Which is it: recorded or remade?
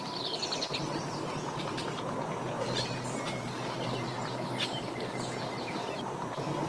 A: recorded